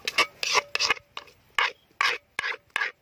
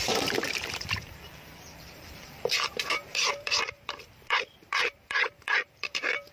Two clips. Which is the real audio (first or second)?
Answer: first